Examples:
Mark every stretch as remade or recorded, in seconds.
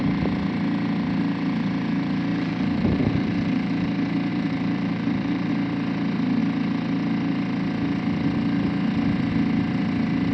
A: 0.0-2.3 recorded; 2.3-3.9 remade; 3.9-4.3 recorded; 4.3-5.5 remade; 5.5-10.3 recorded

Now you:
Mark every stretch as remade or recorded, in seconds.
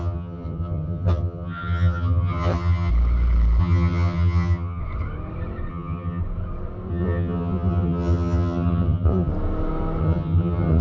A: 0.0-2.9 remade; 2.9-3.6 recorded; 3.6-4.8 remade; 4.8-5.7 recorded; 5.7-6.2 remade; 6.2-6.9 recorded; 6.9-9.3 remade; 9.3-10.0 recorded; 10.0-10.8 remade